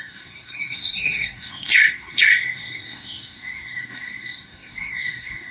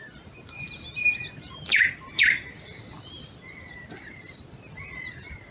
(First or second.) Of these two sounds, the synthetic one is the first